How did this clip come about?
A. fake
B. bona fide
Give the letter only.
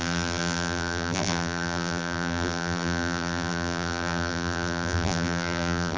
A